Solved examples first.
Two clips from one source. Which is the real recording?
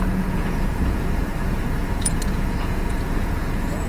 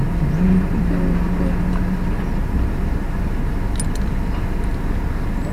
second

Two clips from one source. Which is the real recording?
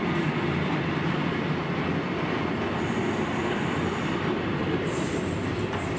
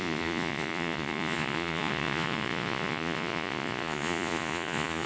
first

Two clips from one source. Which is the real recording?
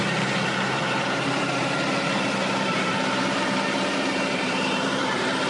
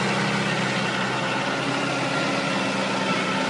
second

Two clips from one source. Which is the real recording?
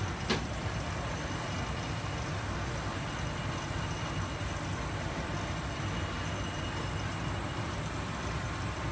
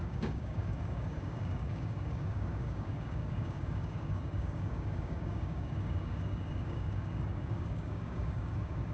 first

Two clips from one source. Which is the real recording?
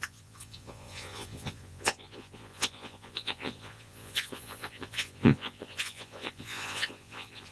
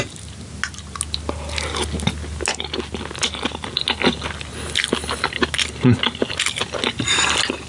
second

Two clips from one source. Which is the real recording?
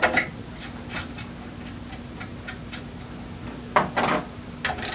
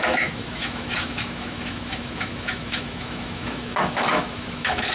first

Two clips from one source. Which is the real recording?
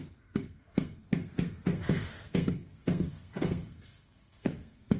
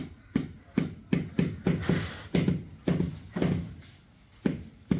second